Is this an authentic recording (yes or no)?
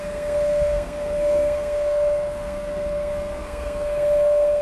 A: no